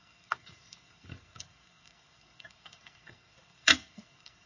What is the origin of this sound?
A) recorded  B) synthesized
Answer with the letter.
B